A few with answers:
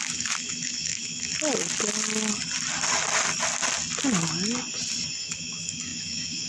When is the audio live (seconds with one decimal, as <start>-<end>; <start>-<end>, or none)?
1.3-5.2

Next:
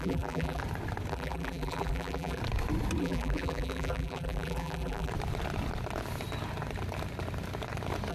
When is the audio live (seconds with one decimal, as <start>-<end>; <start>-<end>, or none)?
0.6-1.1; 2.4-3.0; 5.1-8.1

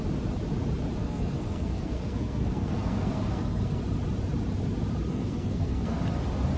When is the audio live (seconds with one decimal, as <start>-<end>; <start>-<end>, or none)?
0.0-1.0; 3.8-5.1; 6.0-6.6

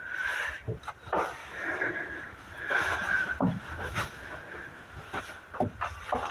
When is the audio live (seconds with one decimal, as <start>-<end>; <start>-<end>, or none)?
0.0-1.4; 5.2-6.3

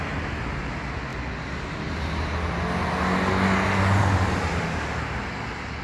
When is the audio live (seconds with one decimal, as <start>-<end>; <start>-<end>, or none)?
0.0-5.8

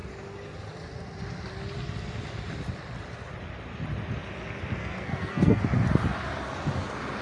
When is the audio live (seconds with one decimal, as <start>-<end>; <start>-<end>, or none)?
0.0-4.8; 5.6-7.2